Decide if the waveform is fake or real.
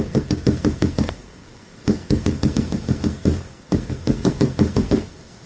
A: fake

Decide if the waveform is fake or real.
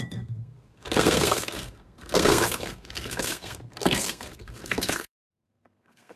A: fake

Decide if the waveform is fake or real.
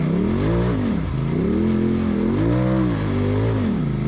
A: real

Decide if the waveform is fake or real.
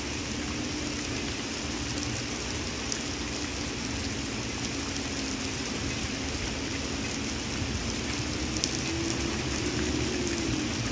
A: real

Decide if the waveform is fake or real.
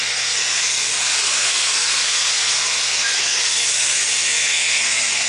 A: fake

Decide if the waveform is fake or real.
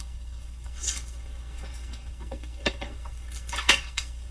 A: fake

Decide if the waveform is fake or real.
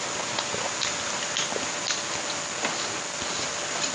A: real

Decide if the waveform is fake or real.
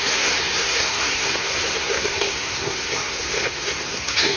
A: fake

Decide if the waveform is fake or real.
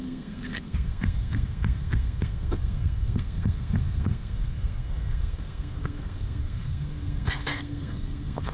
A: fake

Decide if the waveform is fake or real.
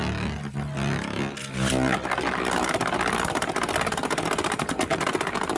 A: real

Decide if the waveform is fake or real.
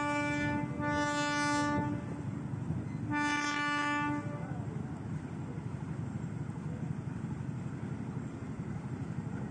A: real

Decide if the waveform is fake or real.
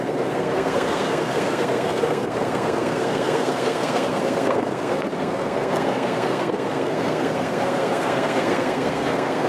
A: fake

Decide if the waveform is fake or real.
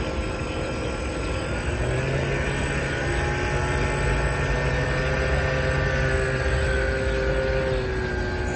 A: real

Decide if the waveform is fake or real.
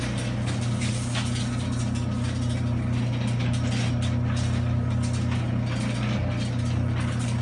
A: real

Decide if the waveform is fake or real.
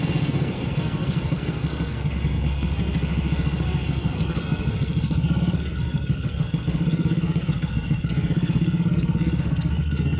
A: fake